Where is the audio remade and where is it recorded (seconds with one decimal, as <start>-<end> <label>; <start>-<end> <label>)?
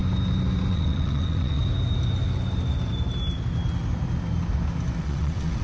0.0-0.7 recorded; 0.7-1.6 remade; 1.6-5.0 recorded; 5.0-5.6 remade